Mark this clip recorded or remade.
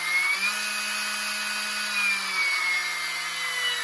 recorded